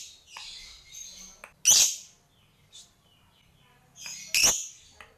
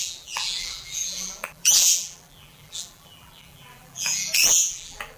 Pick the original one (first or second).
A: first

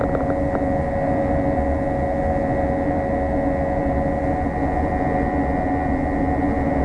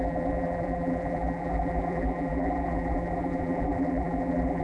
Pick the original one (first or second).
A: first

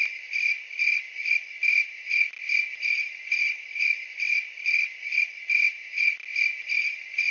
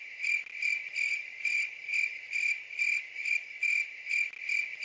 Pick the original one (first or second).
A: first